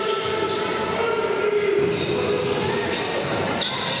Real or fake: real